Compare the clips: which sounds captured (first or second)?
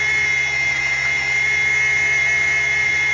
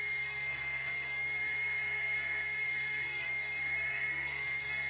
first